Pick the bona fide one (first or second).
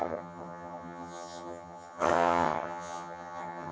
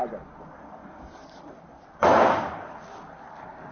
second